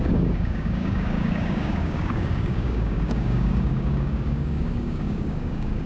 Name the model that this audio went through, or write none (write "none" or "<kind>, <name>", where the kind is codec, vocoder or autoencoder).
codec, DAC